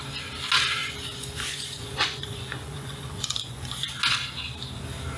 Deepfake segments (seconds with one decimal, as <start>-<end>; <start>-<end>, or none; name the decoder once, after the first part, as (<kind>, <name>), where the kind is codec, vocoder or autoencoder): 0.8-3.9 (vocoder, Vocos)